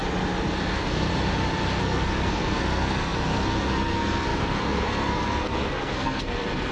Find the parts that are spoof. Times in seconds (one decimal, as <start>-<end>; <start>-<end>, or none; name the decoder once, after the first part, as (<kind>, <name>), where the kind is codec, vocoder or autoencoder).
0.7-1.1 (codec, SNAC); 1.8-6.7